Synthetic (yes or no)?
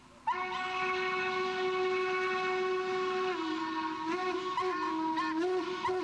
no